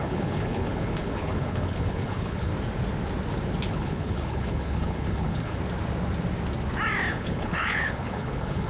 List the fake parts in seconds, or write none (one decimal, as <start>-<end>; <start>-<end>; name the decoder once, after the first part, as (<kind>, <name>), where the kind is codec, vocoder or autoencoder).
0.0-2.5 (codec, HILCodec); 3.7-5.6; 7.1-8.7